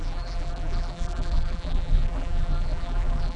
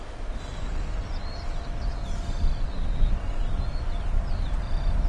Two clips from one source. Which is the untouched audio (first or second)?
second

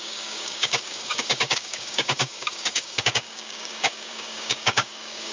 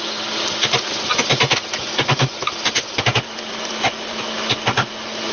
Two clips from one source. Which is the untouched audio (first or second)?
second